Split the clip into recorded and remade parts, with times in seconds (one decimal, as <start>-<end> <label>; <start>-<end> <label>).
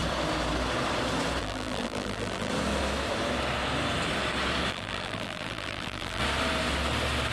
0.0-1.4 recorded; 1.4-2.5 remade; 2.5-4.7 recorded; 4.7-6.2 remade; 6.2-7.3 recorded